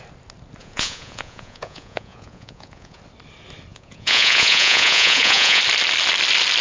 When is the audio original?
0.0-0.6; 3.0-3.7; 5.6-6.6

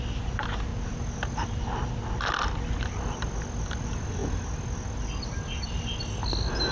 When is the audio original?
0.0-6.7

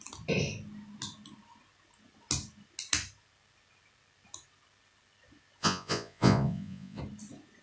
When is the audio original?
0.0-5.6; 7.0-7.6